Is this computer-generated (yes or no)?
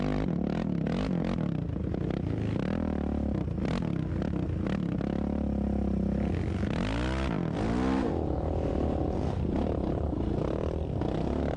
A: no